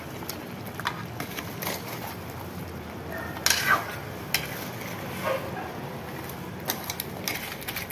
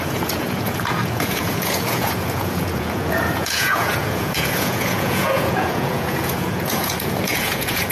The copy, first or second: second